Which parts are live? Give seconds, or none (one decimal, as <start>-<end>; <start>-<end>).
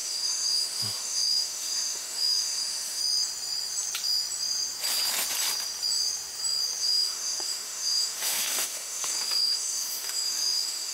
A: 3.0-6.8